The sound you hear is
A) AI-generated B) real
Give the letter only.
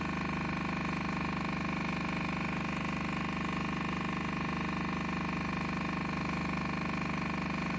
B